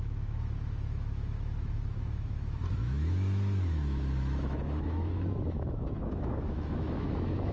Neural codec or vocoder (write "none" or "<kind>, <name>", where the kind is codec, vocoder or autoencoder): autoencoder, DAC-VAE